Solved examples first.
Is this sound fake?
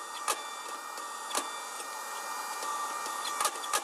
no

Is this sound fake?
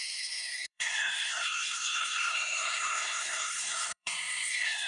yes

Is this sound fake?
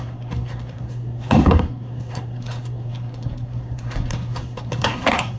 yes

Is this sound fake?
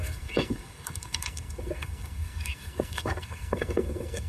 yes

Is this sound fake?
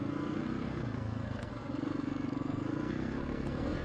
yes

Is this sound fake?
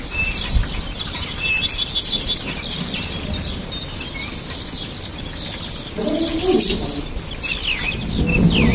no